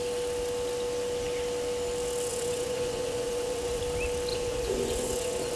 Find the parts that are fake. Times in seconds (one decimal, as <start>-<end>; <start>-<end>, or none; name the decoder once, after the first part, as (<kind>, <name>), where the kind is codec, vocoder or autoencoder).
2.3-3.8 (vocoder, Vocos); 4.3-5.6